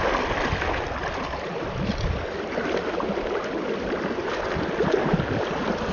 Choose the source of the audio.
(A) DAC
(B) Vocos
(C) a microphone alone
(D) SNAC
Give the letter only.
C